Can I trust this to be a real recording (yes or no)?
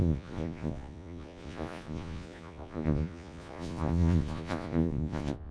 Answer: no